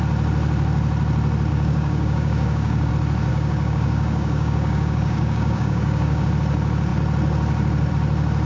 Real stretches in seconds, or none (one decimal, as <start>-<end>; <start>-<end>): 0.0-1.5; 2.9-3.3; 6.3-8.5